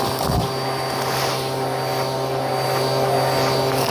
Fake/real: real